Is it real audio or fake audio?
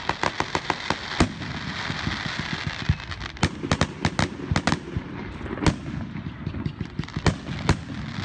real